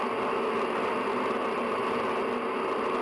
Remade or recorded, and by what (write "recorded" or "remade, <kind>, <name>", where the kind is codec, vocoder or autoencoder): recorded